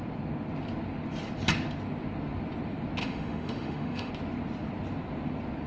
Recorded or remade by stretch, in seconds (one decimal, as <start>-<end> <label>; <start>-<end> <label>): 0.0-3.0 recorded; 3.0-4.1 remade; 4.1-5.7 recorded